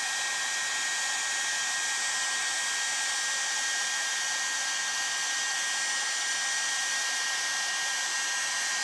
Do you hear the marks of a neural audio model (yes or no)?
no